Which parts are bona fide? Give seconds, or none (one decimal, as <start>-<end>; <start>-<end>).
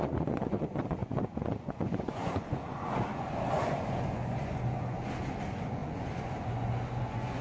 none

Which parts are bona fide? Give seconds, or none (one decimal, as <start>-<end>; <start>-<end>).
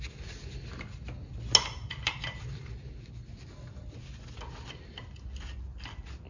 0.0-6.3